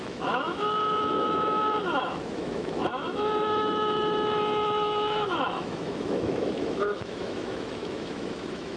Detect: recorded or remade remade